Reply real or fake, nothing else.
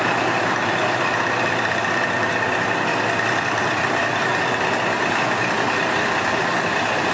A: real